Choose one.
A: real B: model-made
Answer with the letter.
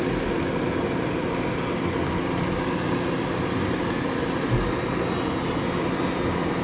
A